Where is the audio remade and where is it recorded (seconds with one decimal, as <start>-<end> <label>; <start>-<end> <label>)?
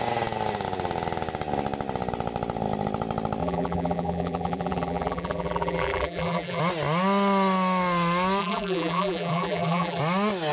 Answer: 0.0-3.4 recorded; 3.4-6.6 remade; 6.6-8.4 recorded; 8.4-10.0 remade; 10.0-10.5 recorded